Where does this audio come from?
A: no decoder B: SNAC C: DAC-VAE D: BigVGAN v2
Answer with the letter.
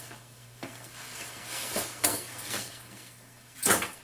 B